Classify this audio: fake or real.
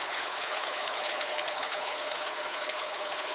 fake